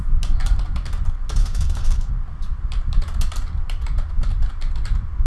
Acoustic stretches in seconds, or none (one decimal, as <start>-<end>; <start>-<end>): 0.0-1.4; 2.1-5.3